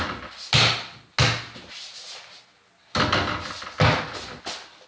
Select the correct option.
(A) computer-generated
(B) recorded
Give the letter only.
B